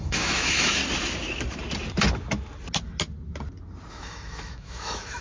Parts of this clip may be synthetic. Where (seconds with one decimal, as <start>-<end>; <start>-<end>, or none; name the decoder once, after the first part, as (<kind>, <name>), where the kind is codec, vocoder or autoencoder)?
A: 0.0-0.8 (autoencoder, DAC-VAE); 3.9-5.2